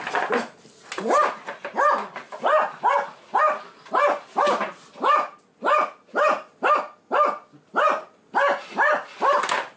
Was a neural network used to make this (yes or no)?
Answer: no